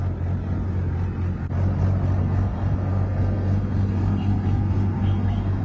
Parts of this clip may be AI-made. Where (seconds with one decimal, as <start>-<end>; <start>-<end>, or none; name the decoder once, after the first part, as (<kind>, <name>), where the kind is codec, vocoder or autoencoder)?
2.2-5.6 (codec, SNAC)